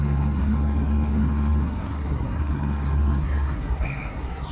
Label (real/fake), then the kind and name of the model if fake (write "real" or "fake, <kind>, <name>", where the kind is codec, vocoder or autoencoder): fake, codec, SNAC